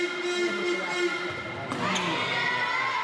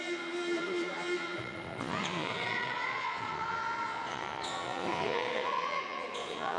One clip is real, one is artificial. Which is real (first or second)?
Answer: first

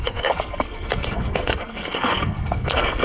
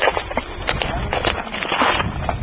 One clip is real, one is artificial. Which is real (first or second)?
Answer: second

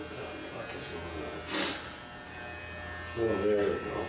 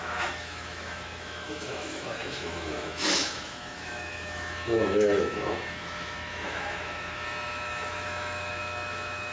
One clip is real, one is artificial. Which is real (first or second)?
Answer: first